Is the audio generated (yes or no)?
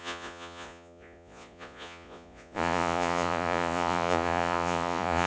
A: yes